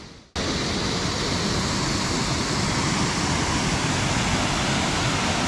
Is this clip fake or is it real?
real